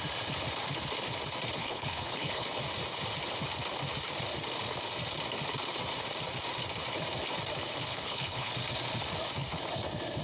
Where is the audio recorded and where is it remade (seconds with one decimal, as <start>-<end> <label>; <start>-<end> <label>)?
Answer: 0.0-1.6 recorded; 1.6-2.5 remade; 2.5-7.9 recorded; 7.9-8.5 remade; 8.5-10.2 recorded